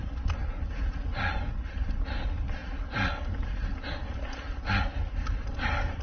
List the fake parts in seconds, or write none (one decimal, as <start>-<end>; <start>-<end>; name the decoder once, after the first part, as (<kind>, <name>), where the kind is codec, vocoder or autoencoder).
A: none